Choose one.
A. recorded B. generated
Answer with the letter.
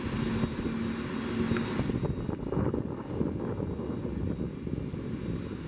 A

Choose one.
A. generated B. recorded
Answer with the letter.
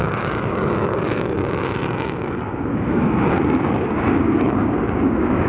A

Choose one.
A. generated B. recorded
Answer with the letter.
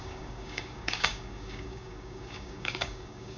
A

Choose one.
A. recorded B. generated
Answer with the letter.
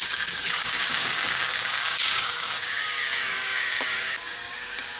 B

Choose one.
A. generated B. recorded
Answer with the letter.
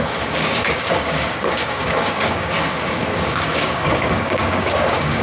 A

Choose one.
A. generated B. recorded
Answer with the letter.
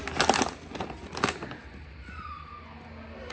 B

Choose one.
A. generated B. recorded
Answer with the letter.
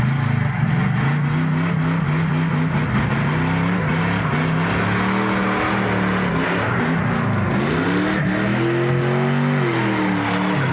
B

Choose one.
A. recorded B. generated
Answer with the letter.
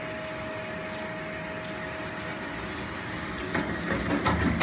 A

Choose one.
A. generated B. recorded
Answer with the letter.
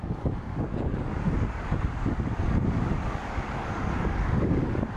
A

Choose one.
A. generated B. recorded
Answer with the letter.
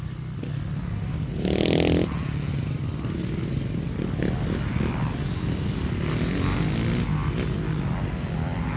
B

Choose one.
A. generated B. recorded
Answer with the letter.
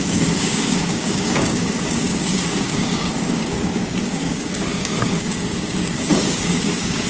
A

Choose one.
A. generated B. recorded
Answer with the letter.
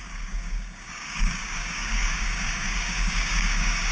A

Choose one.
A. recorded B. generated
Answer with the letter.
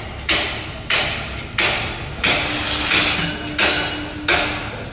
A